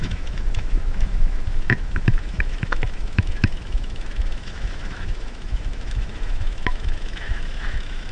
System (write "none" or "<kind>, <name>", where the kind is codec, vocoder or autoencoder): autoencoder, DAC-VAE